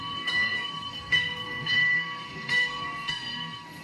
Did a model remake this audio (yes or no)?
yes